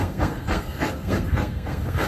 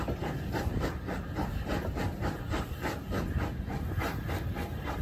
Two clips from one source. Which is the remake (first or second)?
first